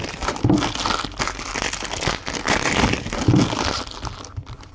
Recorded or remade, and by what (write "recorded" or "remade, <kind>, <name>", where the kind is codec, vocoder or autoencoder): recorded